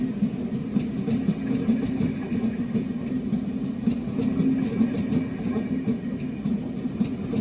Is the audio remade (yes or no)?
no